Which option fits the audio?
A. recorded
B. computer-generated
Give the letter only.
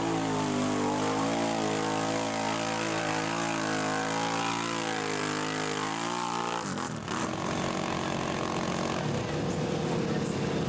A